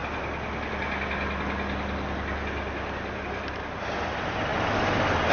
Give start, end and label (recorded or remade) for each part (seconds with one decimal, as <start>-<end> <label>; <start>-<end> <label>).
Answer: 0.0-5.3 recorded